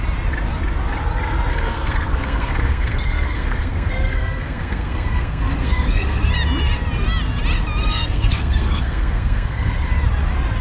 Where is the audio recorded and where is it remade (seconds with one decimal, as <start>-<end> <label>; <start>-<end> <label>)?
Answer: 0.0-1.5 recorded; 1.5-6.2 remade; 6.2-7.8 recorded; 7.8-9.9 remade; 9.9-10.6 recorded